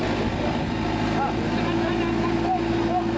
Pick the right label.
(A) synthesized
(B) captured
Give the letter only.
B